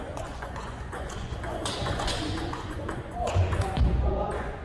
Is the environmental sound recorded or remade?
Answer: remade